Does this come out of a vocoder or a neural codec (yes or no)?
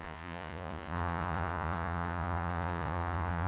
yes